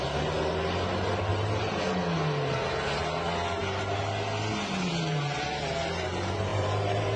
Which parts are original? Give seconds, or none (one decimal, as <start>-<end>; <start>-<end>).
0.0-1.3; 1.8-6.5